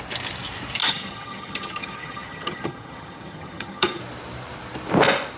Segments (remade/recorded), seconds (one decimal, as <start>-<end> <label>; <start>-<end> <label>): 0.0-0.8 recorded; 0.8-4.0 remade; 4.0-5.4 recorded